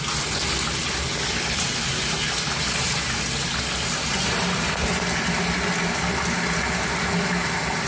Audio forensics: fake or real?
real